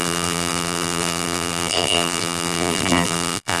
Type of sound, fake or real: fake